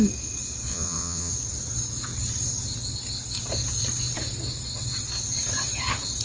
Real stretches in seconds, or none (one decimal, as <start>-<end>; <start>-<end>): 0.0-0.7; 1.3-6.2